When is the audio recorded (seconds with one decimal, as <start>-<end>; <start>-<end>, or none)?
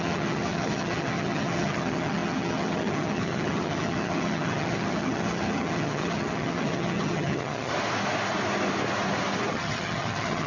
7.7-9.5